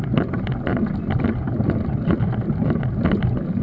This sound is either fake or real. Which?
real